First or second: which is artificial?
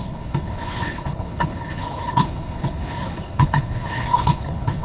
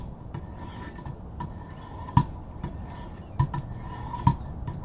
first